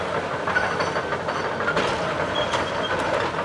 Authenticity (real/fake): real